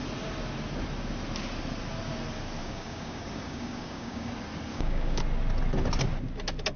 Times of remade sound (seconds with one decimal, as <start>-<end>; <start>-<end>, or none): 2.6-4.3; 4.7-5.2